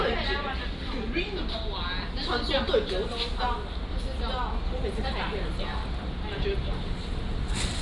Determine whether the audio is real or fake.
real